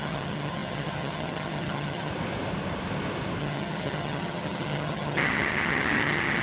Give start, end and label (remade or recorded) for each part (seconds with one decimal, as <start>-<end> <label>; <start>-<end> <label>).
0.0-2.1 remade; 2.1-3.4 recorded; 3.4-6.4 remade